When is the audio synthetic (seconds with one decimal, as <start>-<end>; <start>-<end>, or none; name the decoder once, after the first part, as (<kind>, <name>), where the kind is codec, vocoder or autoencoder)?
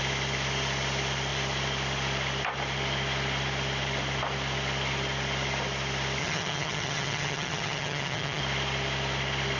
6.2-8.4 (vocoder, HiFi-GAN)